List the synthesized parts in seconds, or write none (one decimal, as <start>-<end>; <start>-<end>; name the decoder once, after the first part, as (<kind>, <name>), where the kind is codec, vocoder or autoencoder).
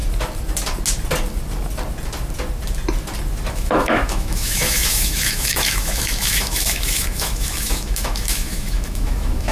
3.5-9.5 (autoencoder, DAC-VAE)